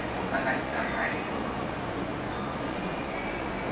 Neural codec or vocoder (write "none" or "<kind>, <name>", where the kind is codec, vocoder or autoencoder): vocoder, Vocos